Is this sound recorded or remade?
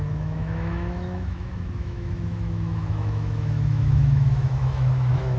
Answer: remade